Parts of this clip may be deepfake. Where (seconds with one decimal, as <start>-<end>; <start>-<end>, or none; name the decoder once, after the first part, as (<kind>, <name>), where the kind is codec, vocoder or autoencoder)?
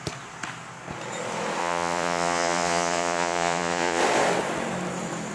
1.6-4.0 (vocoder, Vocos)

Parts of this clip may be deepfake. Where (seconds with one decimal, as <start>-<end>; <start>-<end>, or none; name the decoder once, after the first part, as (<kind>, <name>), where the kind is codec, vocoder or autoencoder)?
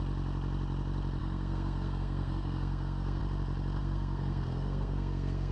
1.2-3.2 (codec, SNAC); 3.8-5.5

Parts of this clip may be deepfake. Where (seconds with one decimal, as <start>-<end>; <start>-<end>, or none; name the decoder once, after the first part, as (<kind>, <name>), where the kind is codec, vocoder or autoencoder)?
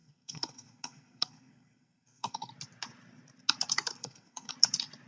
0.0-2.5 (codec, SNAC); 4.0-4.5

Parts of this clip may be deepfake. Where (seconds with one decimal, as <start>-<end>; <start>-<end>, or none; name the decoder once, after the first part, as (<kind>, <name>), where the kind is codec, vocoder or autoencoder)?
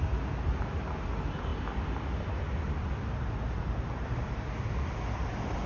none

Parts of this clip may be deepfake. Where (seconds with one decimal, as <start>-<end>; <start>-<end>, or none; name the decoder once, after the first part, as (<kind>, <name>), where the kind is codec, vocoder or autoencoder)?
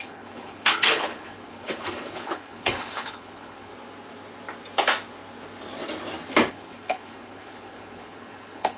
0.0-3.7 (codec, HILCodec); 6.5-8.8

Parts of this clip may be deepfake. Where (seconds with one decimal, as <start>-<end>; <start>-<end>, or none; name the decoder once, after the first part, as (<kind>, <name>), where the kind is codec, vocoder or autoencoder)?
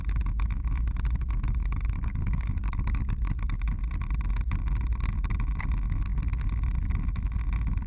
1.6-3.6 (codec, DAC)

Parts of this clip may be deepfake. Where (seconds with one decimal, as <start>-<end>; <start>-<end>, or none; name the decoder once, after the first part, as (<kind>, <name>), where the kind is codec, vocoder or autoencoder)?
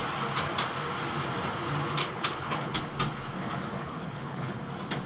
2.0-2.8 (codec, HILCodec); 3.8-4.6